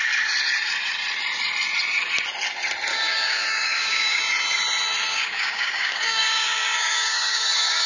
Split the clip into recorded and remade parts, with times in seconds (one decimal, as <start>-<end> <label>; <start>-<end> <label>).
0.0-2.9 recorded; 2.9-4.2 remade; 4.2-5.1 recorded; 5.1-7.9 remade